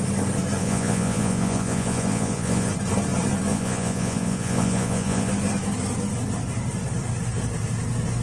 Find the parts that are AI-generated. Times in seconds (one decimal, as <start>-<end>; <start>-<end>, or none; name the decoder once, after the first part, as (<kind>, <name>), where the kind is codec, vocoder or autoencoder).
0.6-2.7 (vocoder, Vocos); 3.5-5.3